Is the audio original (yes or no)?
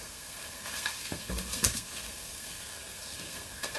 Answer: no